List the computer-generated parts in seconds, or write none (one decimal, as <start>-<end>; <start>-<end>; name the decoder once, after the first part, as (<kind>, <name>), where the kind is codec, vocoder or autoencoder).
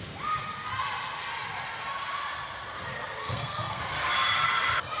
3.2-3.8 (codec, SNAC)